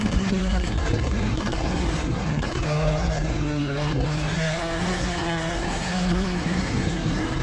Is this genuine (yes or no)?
no